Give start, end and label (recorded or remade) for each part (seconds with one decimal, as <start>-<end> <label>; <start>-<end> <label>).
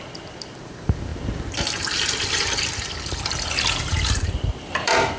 0.0-5.2 remade